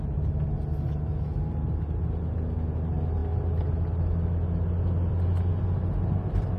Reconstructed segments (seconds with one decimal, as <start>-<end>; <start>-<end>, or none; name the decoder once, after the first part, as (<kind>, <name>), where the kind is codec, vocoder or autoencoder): none

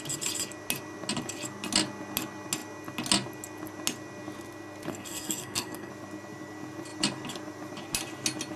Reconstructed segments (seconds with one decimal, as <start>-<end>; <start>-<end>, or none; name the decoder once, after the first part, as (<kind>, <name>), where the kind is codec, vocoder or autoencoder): 4.9-5.9 (codec, SNAC)